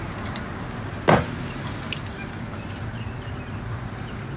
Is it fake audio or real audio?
real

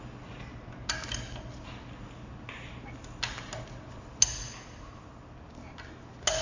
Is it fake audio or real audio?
real